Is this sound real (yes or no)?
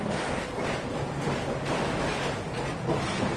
yes